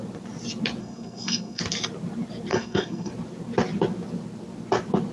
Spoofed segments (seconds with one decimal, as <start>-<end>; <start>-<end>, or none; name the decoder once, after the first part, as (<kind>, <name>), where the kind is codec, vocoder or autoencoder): 0.8-1.6 (codec, SNAC); 2.5-3.1